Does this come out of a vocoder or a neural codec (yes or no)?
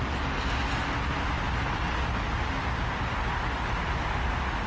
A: no